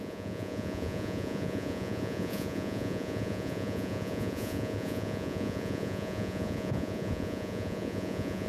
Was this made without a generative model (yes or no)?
no